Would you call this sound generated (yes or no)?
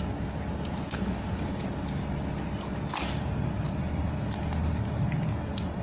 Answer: no